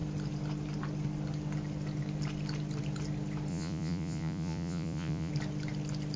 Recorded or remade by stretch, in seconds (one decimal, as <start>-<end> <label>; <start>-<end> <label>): 0.0-3.5 recorded; 3.5-5.3 remade; 5.3-6.2 recorded